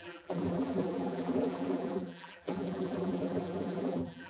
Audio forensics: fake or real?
fake